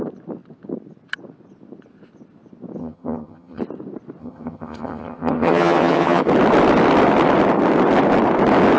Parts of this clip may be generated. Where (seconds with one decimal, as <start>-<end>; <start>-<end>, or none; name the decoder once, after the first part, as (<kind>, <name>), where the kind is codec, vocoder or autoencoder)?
2.8-3.6 (vocoder, HiFi-GAN); 4.2-6.2